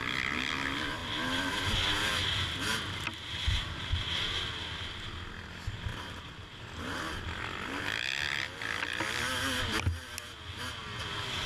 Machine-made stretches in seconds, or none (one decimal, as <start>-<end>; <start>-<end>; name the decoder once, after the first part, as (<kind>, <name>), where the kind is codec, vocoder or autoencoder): 5.9-6.6 (vocoder, BigVGAN v2)